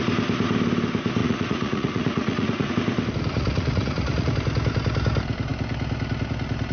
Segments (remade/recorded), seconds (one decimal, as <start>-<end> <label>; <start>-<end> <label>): 0.0-1.2 recorded; 1.2-2.7 remade; 2.7-3.3 recorded; 3.3-4.3 remade; 4.3-6.7 recorded

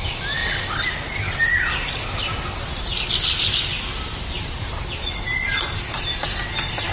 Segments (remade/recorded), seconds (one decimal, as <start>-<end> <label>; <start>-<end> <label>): 0.0-6.9 recorded

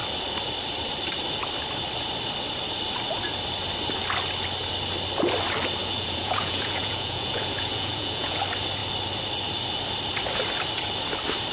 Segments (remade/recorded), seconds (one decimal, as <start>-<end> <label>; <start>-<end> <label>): 0.0-5.8 recorded; 5.8-8.4 remade; 8.4-11.5 recorded

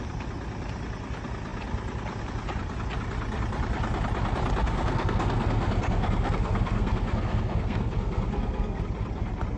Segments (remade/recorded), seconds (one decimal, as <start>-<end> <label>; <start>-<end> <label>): 0.0-4.6 recorded; 4.6-8.8 remade; 8.8-9.6 recorded

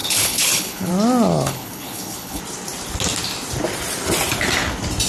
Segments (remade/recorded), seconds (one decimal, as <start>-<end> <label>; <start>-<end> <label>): 0.0-0.9 remade; 0.9-1.3 recorded; 1.3-2.4 remade; 2.4-5.1 recorded

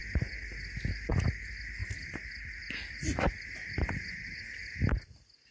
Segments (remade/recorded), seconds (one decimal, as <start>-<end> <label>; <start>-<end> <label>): 0.0-5.5 recorded

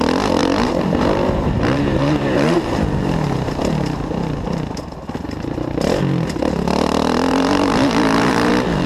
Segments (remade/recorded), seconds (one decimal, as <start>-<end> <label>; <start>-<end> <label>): 0.0-0.4 recorded; 0.4-2.6 remade; 2.6-7.3 recorded; 7.3-8.5 remade; 8.5-8.9 recorded